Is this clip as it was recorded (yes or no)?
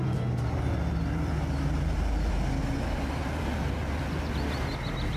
yes